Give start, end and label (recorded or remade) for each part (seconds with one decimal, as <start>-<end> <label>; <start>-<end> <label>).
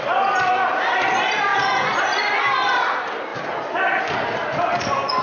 0.0-1.5 remade; 1.5-2.0 recorded; 2.0-5.2 remade